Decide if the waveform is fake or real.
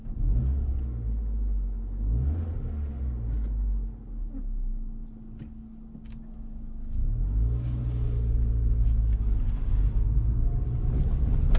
real